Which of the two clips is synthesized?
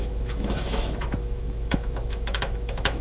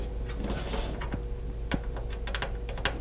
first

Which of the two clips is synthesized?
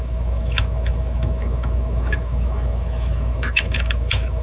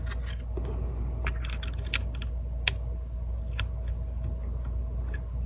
first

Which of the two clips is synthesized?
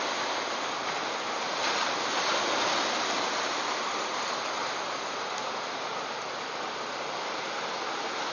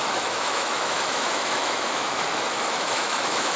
second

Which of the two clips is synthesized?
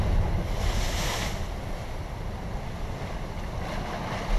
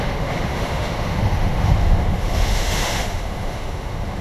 second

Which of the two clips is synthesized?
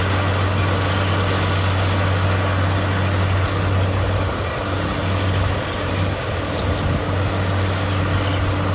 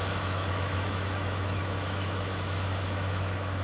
second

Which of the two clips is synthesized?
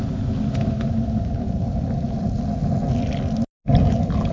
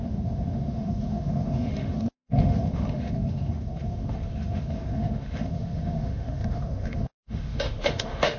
second